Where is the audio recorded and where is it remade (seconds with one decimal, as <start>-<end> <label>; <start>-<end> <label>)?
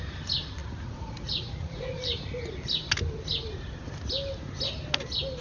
0.0-0.6 recorded; 0.6-2.4 remade; 2.4-5.4 recorded